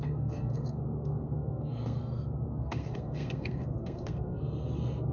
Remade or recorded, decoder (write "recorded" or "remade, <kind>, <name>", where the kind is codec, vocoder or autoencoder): remade, codec, SNAC